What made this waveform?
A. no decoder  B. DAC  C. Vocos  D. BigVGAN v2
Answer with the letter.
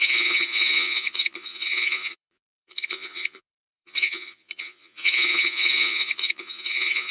C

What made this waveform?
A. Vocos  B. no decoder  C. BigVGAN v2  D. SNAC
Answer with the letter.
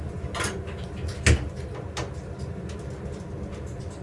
B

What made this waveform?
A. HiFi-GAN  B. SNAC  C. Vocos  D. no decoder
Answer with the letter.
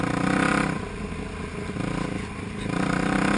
D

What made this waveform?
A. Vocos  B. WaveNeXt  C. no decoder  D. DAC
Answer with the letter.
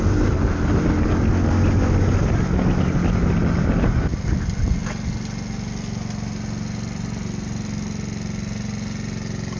C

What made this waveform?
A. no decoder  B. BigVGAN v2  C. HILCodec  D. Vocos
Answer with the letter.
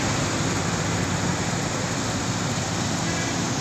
A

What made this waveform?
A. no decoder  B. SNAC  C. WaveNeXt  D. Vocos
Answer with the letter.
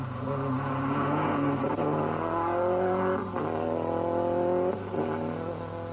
A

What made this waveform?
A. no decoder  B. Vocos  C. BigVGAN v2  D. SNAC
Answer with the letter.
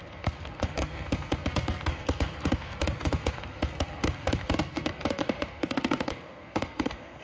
D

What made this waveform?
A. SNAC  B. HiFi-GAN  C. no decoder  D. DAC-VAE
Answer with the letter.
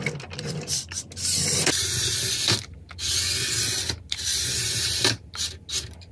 C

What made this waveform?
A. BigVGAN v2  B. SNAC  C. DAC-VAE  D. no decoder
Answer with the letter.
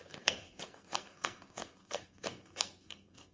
B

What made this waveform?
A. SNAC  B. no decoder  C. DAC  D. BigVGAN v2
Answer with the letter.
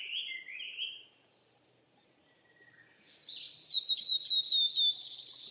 D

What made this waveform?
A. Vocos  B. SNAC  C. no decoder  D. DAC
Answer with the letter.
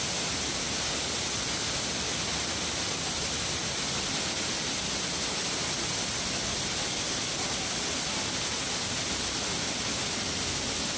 C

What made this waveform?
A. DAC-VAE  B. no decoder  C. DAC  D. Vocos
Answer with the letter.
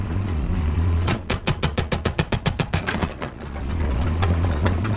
D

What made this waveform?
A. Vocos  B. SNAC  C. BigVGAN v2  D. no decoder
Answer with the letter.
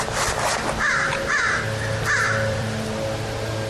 C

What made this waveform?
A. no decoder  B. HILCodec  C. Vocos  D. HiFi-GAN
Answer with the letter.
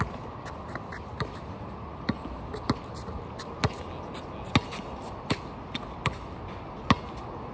A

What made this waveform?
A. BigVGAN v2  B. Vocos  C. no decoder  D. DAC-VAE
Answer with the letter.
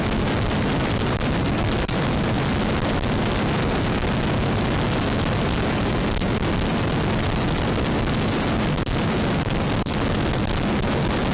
C